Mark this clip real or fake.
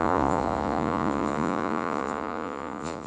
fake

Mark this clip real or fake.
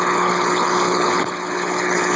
fake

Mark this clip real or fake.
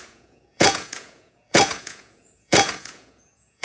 fake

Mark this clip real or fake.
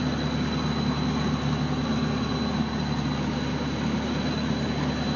real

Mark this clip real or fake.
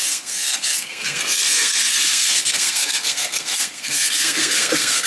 fake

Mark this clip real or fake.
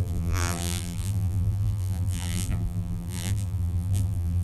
fake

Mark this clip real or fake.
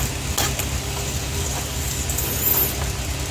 real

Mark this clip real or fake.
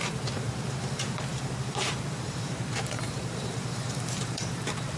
fake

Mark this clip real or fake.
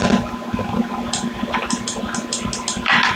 real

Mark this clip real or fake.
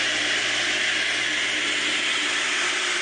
real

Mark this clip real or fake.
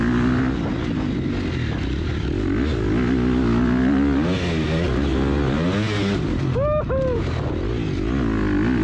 real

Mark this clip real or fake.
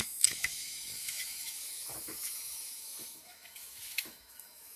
fake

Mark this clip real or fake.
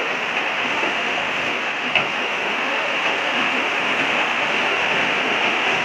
fake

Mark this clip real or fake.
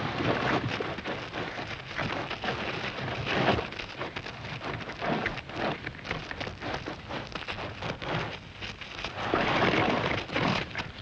real